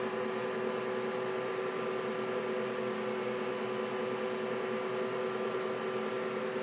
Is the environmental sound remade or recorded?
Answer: recorded